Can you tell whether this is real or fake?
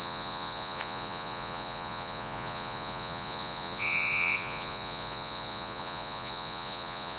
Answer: fake